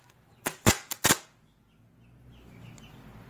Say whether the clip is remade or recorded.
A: recorded